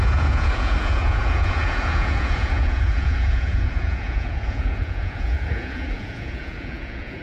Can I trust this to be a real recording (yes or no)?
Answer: no